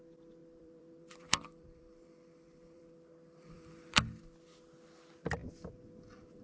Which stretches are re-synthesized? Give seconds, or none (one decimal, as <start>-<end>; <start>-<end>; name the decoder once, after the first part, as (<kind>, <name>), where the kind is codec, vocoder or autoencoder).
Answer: 0.4-4.2 (vocoder, BigVGAN v2)